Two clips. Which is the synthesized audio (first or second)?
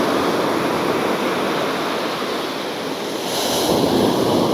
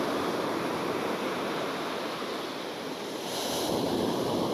second